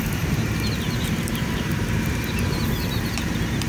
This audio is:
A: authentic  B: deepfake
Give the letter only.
B